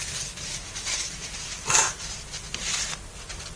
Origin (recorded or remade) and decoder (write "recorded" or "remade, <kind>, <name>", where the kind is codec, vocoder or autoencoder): recorded